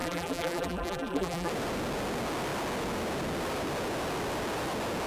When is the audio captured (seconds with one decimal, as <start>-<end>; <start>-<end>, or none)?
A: 1.5-5.1